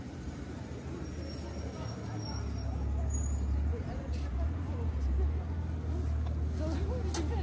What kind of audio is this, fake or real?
real